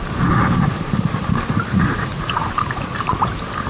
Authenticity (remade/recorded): remade